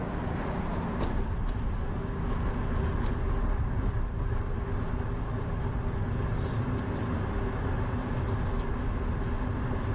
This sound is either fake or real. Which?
real